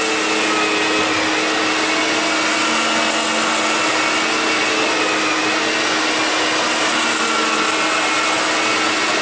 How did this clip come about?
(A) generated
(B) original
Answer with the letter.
B